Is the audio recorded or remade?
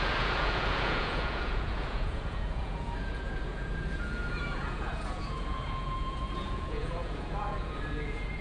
remade